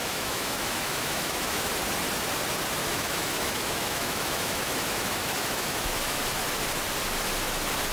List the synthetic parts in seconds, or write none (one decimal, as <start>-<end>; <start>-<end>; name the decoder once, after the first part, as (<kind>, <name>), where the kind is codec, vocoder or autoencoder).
0.0-1.7 (autoencoder, DAC-VAE); 2.8-6.2